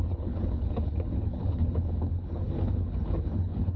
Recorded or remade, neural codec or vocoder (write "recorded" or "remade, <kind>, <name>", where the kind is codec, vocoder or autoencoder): remade, codec, HILCodec